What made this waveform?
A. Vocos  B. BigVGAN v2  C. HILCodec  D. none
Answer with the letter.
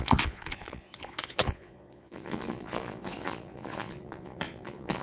A